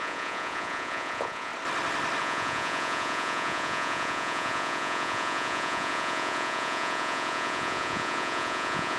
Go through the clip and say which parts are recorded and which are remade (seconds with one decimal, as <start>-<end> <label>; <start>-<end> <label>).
0.0-1.5 remade; 1.5-2.2 recorded; 2.2-9.0 remade